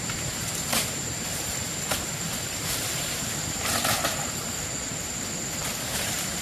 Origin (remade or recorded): remade